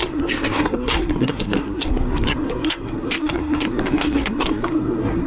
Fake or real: fake